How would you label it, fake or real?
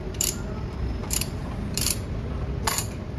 fake